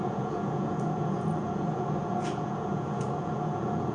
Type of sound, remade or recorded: remade